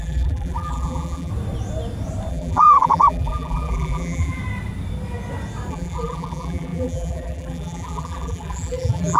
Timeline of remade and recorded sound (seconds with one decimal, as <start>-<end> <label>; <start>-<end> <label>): 0.0-1.3 remade; 1.3-2.3 recorded; 2.3-4.4 remade; 4.4-5.7 recorded; 5.7-9.2 remade